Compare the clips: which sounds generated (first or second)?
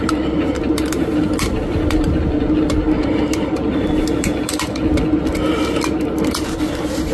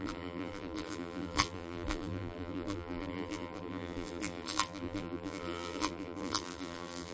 second